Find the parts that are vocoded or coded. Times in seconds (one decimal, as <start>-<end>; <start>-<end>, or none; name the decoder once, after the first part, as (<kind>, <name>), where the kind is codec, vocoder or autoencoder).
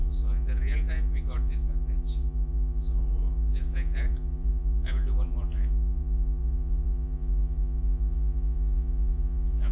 0.0-9.7 (vocoder, Vocos)